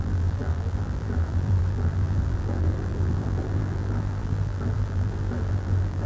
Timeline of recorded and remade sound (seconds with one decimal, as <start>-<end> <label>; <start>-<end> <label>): 0.0-6.1 remade